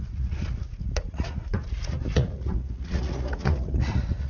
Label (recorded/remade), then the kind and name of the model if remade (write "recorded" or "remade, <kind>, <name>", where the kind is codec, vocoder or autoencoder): remade, vocoder, Vocos